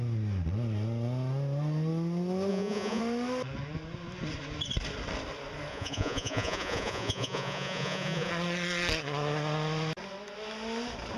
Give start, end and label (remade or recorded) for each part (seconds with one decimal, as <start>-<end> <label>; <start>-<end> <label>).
0.0-2.5 recorded; 2.5-3.0 remade; 3.0-5.7 recorded; 5.7-8.3 remade; 8.3-11.2 recorded